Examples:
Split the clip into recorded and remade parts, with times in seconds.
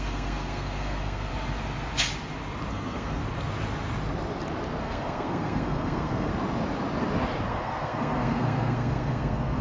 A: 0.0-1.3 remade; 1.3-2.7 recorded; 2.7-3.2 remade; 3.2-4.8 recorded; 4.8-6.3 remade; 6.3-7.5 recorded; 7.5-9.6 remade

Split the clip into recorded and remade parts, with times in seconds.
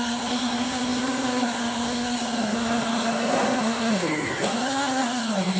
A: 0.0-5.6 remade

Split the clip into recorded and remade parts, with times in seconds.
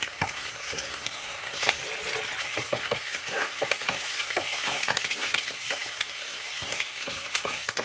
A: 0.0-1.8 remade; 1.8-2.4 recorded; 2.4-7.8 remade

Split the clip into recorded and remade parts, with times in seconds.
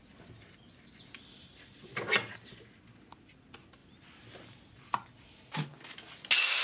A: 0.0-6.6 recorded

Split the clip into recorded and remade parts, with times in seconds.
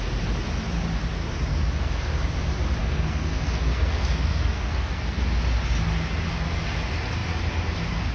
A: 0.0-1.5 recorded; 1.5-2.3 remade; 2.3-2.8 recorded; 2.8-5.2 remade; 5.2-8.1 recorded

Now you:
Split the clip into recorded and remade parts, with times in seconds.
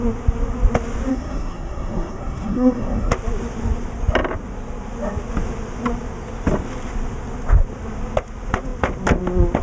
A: 0.0-1.1 recorded; 1.1-3.1 remade; 3.1-9.6 recorded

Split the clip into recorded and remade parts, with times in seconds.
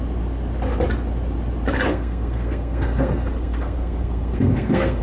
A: 0.0-1.9 recorded; 1.9-5.0 remade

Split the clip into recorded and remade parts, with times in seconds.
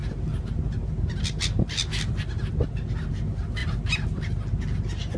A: 0.0-5.2 recorded